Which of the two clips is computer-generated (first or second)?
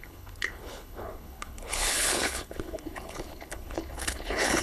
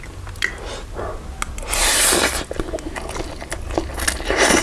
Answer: first